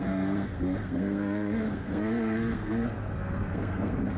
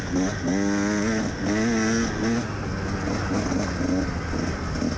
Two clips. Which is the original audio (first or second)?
second